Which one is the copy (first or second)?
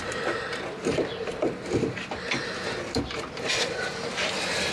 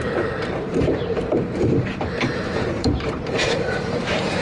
second